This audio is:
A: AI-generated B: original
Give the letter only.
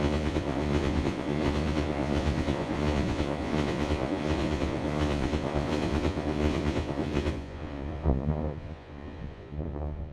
A